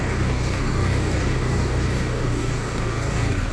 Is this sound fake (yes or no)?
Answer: yes